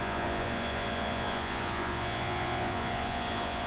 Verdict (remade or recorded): remade